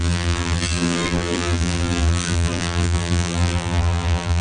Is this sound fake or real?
fake